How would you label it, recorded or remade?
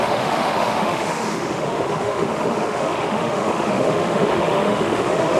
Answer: remade